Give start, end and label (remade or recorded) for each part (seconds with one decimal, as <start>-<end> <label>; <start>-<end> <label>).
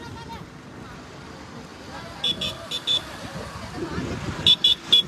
0.0-5.1 recorded